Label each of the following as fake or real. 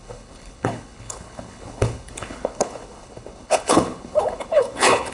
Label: fake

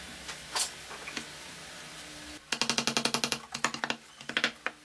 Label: real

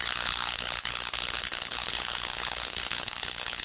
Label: fake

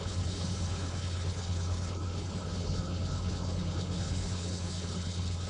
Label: fake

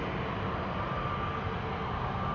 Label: real